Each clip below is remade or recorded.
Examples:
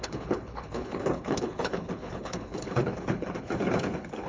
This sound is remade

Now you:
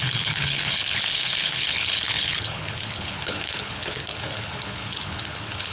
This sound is remade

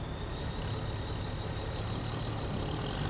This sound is recorded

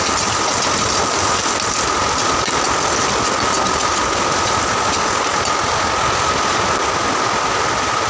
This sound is recorded